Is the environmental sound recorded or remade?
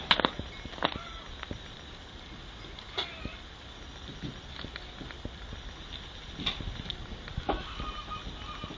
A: recorded